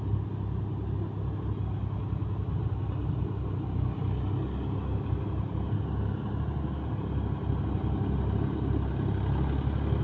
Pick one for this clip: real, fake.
real